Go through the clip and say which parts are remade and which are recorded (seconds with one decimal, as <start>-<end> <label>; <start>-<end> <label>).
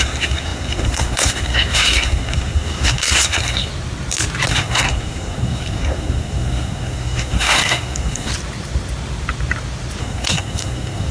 0.0-3.7 remade; 3.7-4.5 recorded; 4.5-8.3 remade; 8.3-10.0 recorded; 10.0-11.1 remade